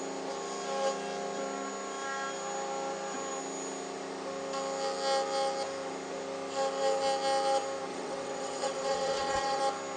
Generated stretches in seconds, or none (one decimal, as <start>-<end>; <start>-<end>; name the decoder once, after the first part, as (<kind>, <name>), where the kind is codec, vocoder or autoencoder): 7.9-9.6 (vocoder, WaveNeXt)